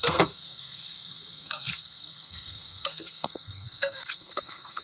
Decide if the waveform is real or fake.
fake